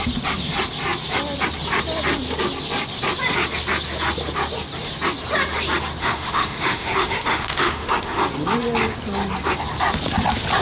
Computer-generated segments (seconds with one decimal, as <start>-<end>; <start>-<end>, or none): 6.0-8.2